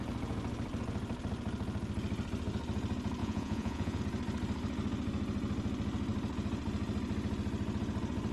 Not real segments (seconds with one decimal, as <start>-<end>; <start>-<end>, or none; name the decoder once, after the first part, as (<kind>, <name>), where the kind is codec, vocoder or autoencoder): 3.2-4.0 (vocoder, Vocos)